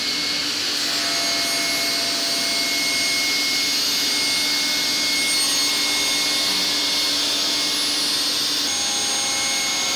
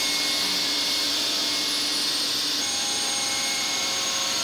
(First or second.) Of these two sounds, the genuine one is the first